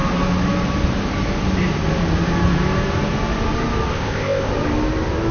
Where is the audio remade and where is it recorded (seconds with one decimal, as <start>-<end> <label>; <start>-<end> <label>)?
0.0-3.9 recorded; 3.9-4.5 remade; 4.5-5.3 recorded